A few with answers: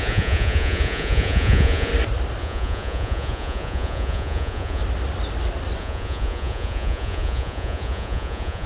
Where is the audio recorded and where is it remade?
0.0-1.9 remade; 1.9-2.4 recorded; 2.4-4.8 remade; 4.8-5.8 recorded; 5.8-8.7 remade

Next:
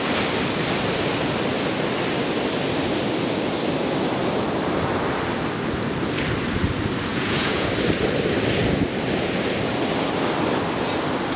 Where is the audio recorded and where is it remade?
0.0-7.1 recorded; 7.1-7.7 remade; 7.7-11.4 recorded